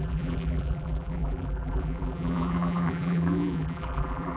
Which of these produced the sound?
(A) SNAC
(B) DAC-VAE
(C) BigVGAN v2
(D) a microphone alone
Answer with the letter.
C